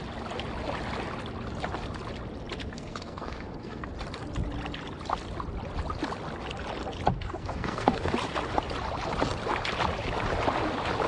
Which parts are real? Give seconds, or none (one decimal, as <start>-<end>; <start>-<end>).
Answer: 0.0-2.6; 3.9-7.1; 8.1-11.1